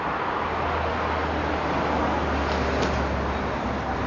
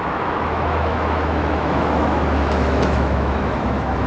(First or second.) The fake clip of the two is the second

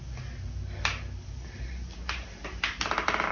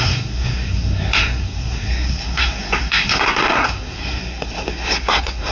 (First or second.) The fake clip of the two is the second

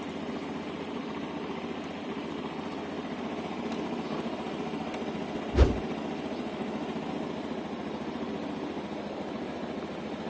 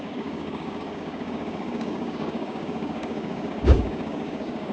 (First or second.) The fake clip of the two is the second